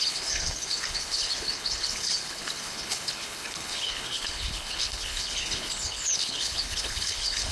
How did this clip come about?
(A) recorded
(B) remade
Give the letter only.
B